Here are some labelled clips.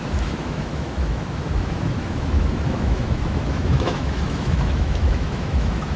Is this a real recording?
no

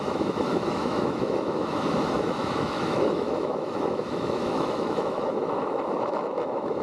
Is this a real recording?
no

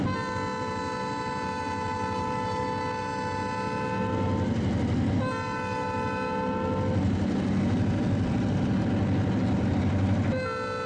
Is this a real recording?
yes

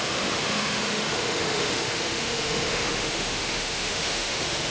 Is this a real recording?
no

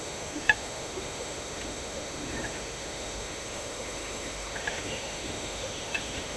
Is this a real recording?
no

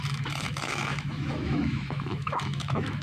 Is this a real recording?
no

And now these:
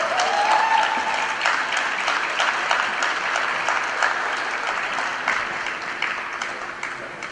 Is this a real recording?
yes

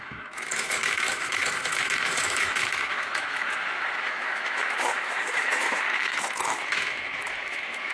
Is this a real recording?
no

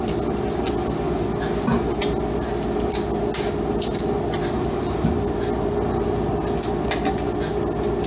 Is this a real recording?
yes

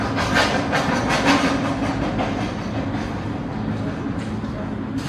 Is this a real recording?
yes